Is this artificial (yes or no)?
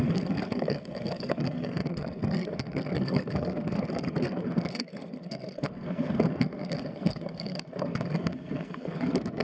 yes